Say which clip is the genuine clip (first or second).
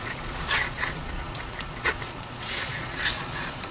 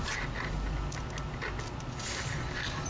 second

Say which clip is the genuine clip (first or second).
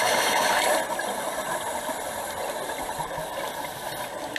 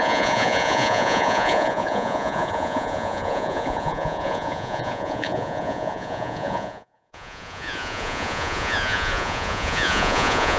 first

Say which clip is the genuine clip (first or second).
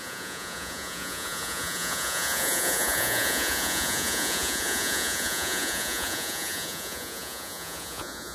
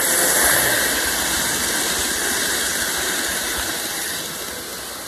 second